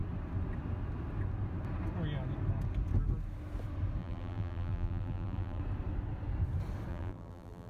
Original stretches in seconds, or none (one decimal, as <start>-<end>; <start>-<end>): 0.0-4.0; 5.6-6.9